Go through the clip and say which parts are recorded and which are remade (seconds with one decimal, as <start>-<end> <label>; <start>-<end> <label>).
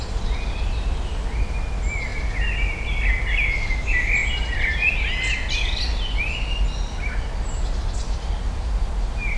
0.0-9.4 recorded